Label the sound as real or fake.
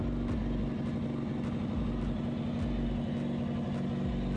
real